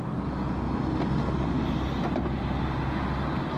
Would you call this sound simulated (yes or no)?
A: no